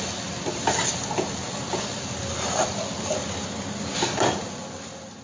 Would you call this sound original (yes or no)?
yes